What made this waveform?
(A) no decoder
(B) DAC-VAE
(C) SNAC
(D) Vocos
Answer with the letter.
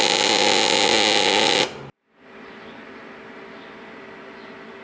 A